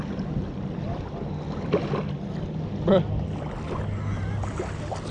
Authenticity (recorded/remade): recorded